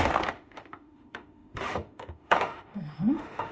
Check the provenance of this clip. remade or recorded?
remade